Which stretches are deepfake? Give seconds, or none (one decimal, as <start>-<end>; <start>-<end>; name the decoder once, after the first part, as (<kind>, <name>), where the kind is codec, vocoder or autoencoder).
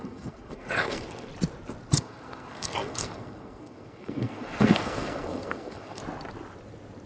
0.0-1.3 (codec, SNAC); 2.0-6.0